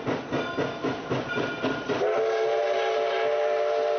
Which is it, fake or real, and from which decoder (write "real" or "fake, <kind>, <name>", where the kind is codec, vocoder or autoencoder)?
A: real